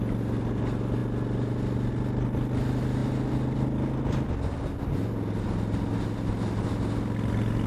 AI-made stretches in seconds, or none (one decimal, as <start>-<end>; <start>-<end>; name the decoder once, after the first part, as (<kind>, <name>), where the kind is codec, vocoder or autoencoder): none

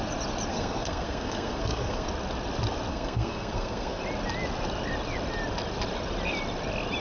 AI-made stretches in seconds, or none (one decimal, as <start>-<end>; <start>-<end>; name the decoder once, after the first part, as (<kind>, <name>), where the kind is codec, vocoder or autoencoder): 0.5-2.1 (codec, SNAC); 2.9-4.0

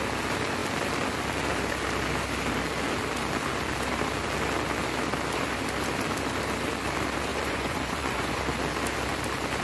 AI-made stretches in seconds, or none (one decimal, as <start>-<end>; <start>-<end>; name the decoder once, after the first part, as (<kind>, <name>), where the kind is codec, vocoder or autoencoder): 7.3-8.4 (vocoder, Vocos)

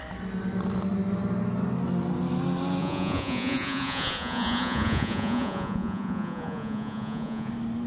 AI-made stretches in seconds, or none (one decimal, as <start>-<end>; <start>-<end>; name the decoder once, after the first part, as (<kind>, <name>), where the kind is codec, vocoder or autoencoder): 2.8-7.5 (vocoder, Vocos)

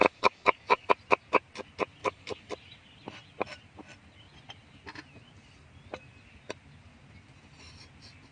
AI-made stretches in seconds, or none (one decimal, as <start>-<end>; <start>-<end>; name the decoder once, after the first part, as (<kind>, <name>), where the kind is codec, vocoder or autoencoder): 0.0-0.9 (codec, DAC); 2.0-2.5

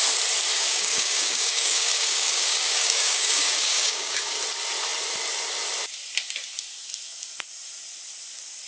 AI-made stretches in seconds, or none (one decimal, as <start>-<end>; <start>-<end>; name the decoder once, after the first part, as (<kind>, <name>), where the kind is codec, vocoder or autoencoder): 0.5-4.4 (codec, DAC)

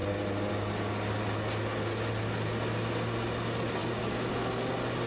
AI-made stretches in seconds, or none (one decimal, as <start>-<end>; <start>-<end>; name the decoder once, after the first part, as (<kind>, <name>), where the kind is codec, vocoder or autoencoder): 3.8-4.3 (codec, DAC)